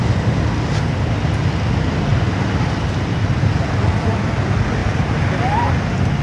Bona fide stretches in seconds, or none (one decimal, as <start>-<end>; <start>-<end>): 0.0-2.1; 3.3-4.8; 5.7-6.2